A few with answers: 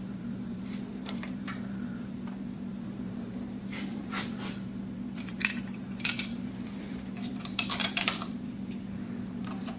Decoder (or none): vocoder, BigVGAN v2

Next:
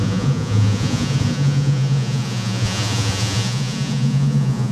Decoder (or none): vocoder, Vocos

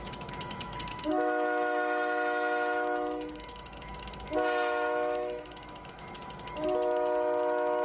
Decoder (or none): autoencoder, DAC-VAE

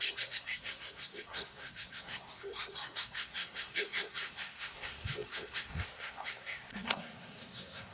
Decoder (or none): codec, SNAC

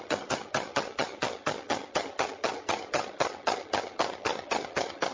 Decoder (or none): vocoder, HiFi-GAN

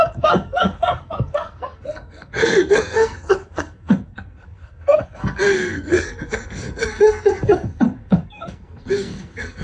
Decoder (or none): codec, SNAC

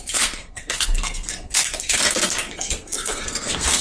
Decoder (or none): codec, SNAC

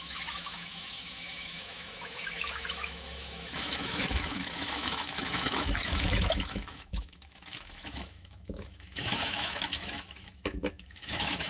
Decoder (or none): autoencoder, DAC-VAE